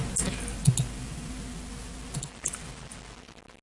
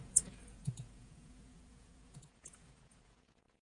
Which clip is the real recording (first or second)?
first